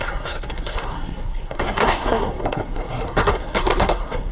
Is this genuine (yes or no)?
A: no